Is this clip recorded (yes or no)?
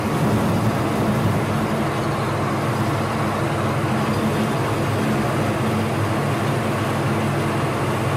yes